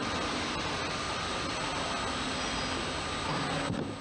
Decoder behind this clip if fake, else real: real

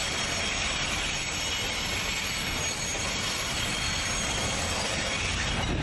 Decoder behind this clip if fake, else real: real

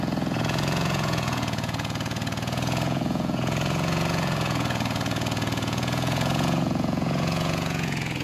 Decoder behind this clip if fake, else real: fake, vocoder, Vocos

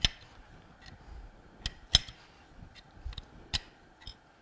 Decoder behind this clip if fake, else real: real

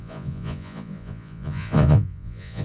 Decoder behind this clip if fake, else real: fake, vocoder, Vocos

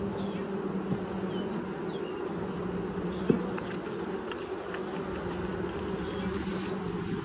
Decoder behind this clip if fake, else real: real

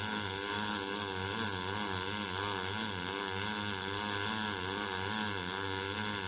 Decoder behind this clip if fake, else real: real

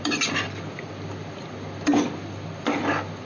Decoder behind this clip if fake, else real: real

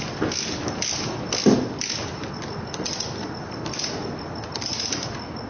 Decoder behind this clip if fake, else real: real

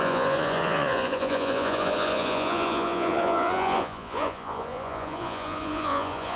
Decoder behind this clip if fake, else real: fake, vocoder, Vocos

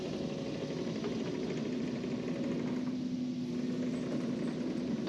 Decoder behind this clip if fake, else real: real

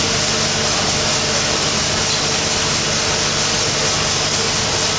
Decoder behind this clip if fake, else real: real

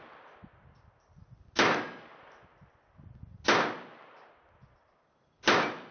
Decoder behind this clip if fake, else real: real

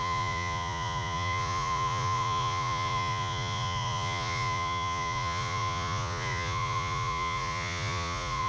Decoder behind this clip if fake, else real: fake, vocoder, Vocos